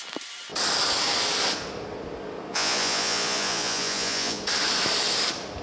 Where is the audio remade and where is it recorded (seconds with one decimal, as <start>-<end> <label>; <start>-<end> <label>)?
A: 0.0-2.5 recorded; 2.5-4.4 remade; 4.4-5.6 recorded